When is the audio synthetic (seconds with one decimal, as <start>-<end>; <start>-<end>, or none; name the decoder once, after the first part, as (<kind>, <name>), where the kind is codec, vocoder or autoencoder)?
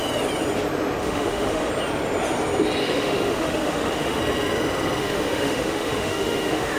1.0-1.7 (autoencoder, DAC-VAE); 2.8-4.2; 5.0-6.8